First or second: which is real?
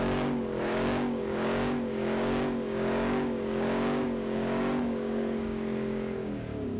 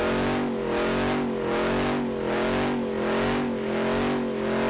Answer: second